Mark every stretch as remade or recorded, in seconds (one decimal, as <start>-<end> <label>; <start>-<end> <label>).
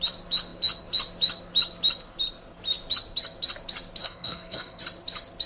0.0-4.0 recorded; 4.0-4.8 remade; 4.8-5.5 recorded